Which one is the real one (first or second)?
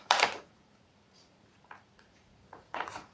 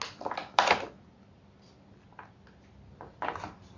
second